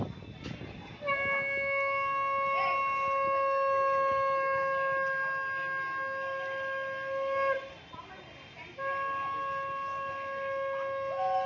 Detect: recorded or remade recorded